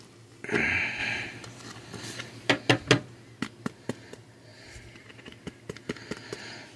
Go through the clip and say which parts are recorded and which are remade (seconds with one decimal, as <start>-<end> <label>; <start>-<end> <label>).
0.0-1.0 recorded; 1.0-2.5 remade; 2.5-4.5 recorded; 4.5-5.8 remade; 5.8-6.8 recorded